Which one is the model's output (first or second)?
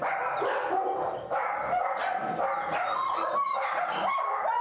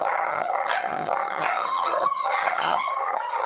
second